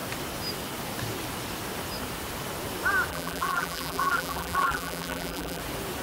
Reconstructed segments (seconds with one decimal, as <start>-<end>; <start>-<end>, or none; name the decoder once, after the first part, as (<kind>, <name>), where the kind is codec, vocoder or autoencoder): 3.1-5.6 (vocoder, BigVGAN v2)